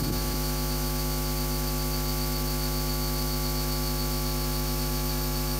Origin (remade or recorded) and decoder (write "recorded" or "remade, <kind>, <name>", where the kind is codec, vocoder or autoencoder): remade, autoencoder, DAC-VAE